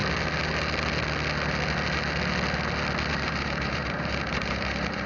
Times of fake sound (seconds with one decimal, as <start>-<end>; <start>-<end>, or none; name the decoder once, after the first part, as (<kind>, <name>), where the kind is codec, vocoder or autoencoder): 3.1-5.1 (vocoder, BigVGAN v2)